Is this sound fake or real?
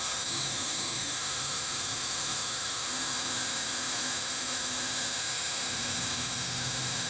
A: fake